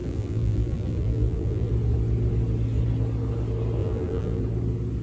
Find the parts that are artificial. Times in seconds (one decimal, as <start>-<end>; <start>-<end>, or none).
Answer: 0.0-1.7; 3.8-4.4